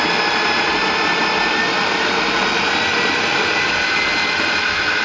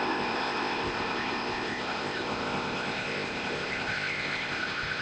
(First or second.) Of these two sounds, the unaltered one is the first